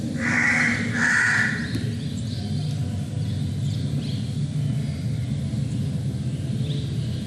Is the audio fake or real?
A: real